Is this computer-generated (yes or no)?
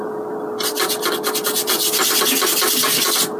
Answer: no